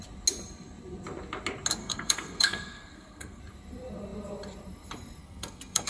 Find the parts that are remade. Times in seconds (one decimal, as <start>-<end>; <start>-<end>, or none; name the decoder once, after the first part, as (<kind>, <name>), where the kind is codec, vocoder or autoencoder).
1.8-3.4 (codec, SNAC); 5.2-5.9